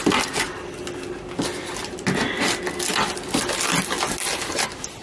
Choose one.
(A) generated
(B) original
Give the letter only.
B